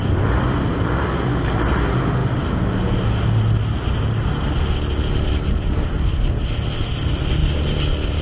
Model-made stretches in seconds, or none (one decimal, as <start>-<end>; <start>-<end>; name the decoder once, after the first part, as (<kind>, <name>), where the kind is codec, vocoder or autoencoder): none